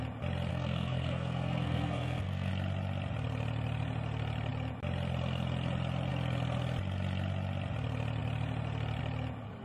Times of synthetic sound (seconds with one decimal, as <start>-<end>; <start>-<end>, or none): 0.5-2.5